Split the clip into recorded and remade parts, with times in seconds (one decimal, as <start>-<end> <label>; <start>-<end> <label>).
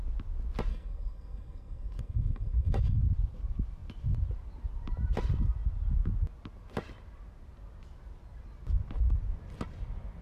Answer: 0.0-0.7 recorded; 0.7-3.0 remade; 3.0-10.2 recorded